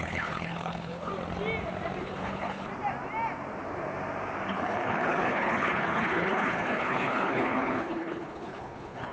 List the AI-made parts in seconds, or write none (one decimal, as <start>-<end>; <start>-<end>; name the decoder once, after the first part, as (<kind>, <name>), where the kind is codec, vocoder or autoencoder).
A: 0.0-1.1 (codec, HILCodec); 2.0-2.7; 4.5-9.1